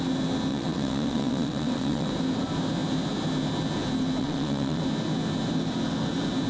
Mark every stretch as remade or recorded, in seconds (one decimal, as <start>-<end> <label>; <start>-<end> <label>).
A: 0.0-0.5 recorded; 0.5-2.1 remade; 2.1-4.2 recorded; 4.2-4.8 remade; 4.8-6.5 recorded